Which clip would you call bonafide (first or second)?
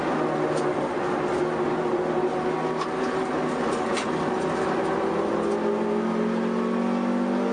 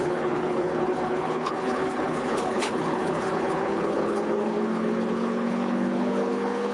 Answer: first